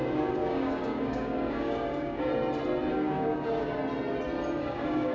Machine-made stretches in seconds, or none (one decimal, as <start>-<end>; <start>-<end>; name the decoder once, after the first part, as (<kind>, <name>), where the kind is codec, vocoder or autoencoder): 0.0-2.3 (codec, DAC); 2.9-3.8; 4.6-5.1